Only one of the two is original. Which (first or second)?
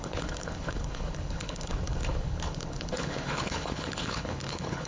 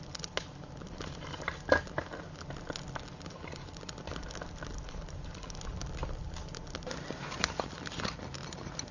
second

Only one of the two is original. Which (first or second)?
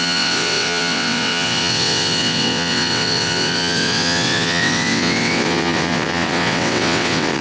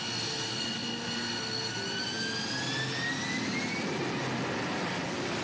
second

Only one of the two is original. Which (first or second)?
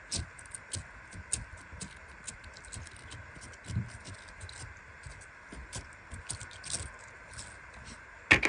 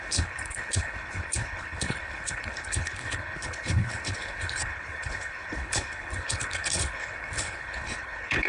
first